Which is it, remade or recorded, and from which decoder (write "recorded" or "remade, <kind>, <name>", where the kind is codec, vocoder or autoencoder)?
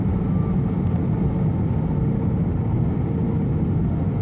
recorded